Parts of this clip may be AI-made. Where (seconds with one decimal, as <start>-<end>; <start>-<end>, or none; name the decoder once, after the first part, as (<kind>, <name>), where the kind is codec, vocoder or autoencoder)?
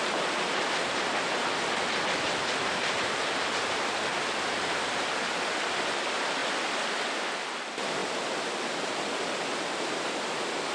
6.4-7.0 (vocoder, BigVGAN v2)